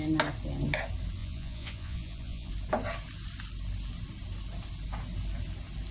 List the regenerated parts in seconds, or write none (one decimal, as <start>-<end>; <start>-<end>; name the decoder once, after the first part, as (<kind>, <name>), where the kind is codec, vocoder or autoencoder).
1.2-2.5 (vocoder, Vocos)